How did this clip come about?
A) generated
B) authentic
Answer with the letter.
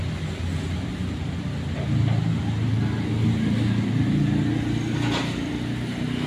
B